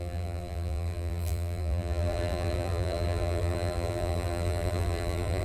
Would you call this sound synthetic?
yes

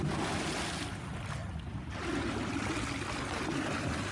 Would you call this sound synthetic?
no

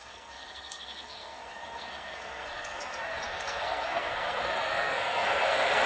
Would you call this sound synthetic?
yes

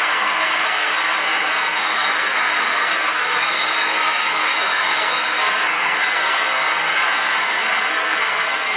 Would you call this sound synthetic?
yes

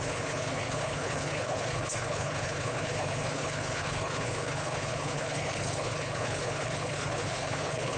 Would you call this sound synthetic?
yes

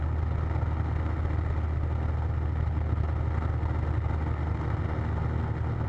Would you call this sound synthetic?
no